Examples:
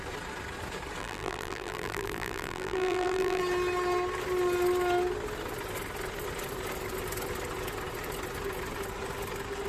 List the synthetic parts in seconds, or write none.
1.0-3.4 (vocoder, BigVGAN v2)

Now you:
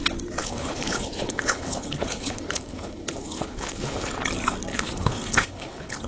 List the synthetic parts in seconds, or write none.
0.4-4.1 (codec, HILCodec); 4.7-6.1